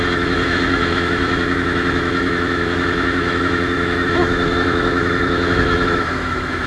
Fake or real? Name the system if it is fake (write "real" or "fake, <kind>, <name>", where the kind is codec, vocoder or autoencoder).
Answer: fake, autoencoder, DAC-VAE